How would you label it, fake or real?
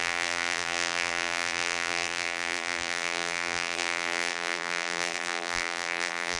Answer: fake